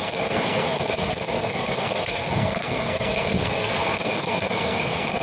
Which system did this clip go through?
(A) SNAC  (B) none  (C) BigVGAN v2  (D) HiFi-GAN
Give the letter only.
A